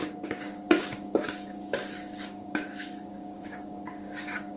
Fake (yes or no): yes